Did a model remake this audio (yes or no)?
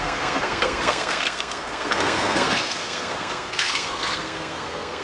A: yes